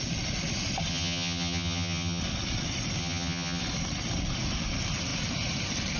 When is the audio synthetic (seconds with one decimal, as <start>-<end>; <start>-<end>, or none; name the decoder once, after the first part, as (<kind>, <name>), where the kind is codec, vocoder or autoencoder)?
0.9-2.2 (vocoder, HiFi-GAN); 3.0-3.6